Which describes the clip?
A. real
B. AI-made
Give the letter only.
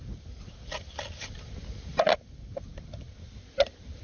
A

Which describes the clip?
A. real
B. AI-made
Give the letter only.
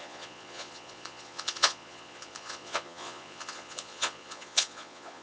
B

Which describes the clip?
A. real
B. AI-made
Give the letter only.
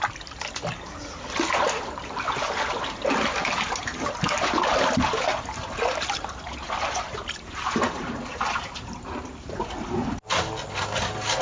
A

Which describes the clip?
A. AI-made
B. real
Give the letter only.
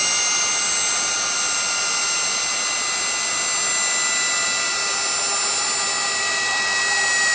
B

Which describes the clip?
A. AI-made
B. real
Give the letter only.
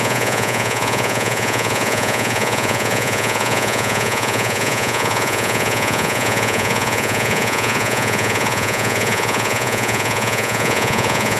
A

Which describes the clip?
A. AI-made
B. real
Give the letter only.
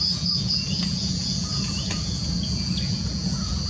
A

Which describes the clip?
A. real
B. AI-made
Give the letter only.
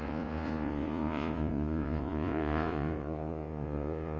B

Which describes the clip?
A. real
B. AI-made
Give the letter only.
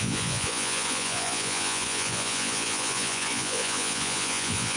B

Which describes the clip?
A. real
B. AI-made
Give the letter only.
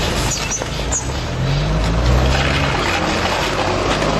A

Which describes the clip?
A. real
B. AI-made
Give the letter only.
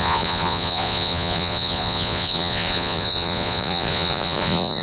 B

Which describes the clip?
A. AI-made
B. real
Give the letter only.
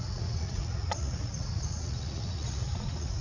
A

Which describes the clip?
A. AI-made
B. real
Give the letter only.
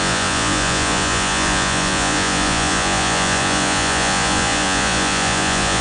A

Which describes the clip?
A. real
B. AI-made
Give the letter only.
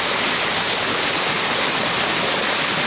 A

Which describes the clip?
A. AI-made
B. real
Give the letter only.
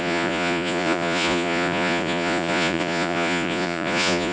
A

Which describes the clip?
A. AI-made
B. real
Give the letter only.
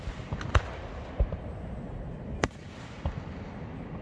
B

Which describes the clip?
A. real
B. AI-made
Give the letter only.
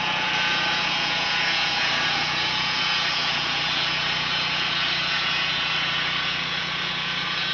B